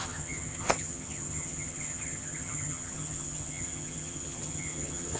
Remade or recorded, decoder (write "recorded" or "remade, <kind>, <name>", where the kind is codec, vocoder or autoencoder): remade, vocoder, HiFi-GAN